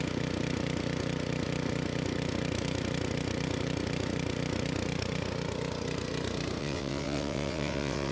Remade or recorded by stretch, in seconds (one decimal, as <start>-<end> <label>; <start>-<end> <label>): 0.0-6.6 recorded; 6.6-8.1 remade

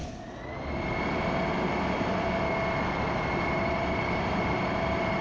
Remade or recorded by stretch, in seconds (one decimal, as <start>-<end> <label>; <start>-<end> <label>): 0.0-3.1 recorded; 3.1-5.2 remade

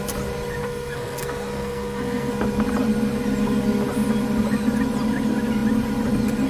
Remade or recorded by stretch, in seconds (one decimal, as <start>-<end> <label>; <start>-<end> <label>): 0.0-0.6 recorded; 0.6-2.3 remade; 2.3-6.5 recorded

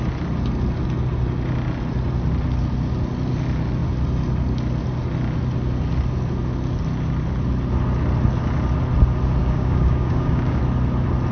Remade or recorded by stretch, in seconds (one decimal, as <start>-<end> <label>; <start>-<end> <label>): 0.0-9.4 recorded; 9.4-10.6 remade; 10.6-11.3 recorded

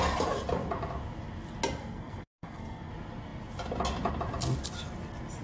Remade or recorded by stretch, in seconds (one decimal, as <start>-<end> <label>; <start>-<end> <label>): 0.0-1.8 recorded; 1.8-2.9 remade; 2.9-5.4 recorded

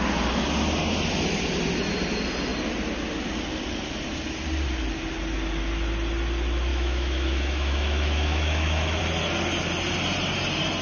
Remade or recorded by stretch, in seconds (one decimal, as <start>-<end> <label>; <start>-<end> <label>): 0.0-6.7 recorded; 6.7-9.0 remade; 9.0-10.8 recorded